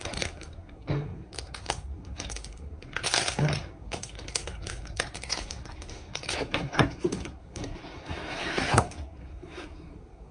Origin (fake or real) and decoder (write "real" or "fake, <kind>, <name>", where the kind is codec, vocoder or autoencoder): fake, codec, SNAC